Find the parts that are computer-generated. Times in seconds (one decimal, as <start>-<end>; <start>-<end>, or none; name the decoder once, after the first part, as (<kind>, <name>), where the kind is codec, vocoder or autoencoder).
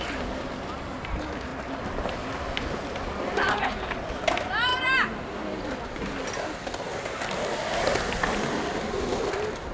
none